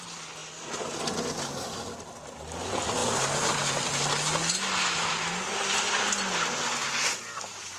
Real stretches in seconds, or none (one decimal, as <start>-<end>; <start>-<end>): 0.0-7.8